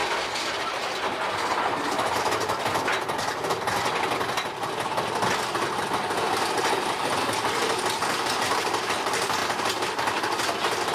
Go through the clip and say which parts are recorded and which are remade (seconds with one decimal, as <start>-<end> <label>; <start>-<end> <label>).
0.0-3.5 recorded; 3.5-7.6 remade; 7.6-8.8 recorded; 8.8-9.4 remade; 9.4-10.9 recorded